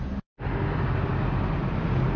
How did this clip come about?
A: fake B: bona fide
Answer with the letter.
B